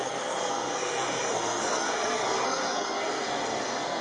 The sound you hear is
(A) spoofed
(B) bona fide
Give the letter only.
A